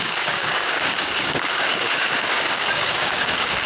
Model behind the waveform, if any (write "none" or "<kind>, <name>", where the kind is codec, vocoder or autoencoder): codec, DAC